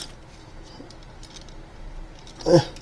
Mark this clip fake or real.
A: real